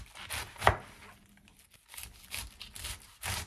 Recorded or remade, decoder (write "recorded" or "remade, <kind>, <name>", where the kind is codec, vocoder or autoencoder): recorded